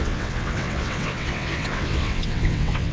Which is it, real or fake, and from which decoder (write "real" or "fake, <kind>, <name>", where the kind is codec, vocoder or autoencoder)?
fake, vocoder, WaveNeXt